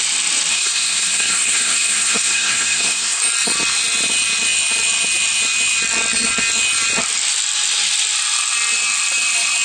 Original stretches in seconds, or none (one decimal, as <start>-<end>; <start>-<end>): 0.0-0.5; 3.2-9.6